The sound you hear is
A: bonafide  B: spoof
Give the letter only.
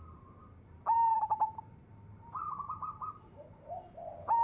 B